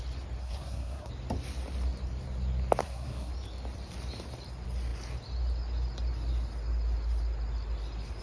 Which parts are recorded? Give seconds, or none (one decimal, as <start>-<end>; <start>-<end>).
0.0-0.4; 1.1-2.8; 3.3-8.2